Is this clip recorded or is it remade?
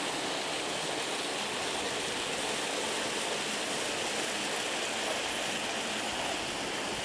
recorded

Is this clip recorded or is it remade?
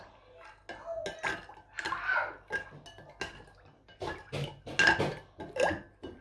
recorded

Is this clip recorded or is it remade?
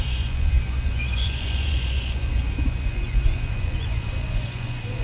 remade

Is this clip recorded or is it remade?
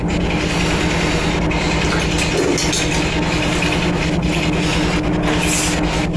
recorded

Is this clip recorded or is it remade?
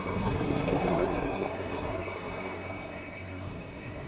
remade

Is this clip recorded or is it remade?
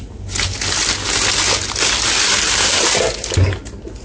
recorded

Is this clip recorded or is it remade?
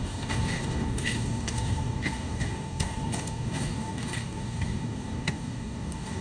remade